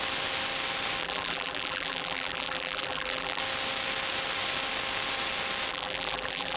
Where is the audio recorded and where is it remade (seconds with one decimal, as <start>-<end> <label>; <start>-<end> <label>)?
0.0-1.0 recorded; 1.0-3.4 remade; 3.4-5.7 recorded; 5.7-6.6 remade